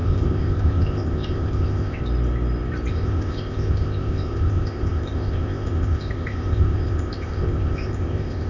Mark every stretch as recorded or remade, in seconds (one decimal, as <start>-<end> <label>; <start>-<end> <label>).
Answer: 0.0-2.0 remade; 2.0-2.9 recorded; 2.9-8.5 remade